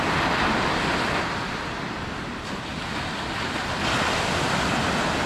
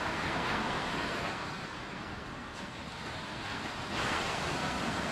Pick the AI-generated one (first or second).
second